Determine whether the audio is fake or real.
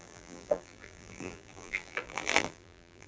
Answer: fake